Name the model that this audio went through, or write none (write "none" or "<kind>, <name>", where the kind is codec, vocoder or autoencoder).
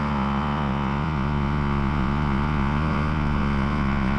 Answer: vocoder, Vocos